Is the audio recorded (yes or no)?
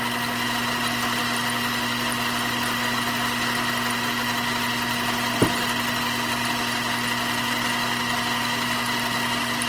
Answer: yes